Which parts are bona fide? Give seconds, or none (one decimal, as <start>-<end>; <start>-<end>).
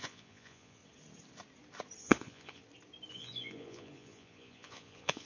0.8-2.0; 2.6-3.1